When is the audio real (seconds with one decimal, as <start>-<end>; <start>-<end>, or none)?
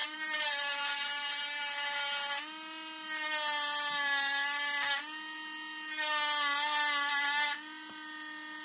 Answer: 1.4-8.6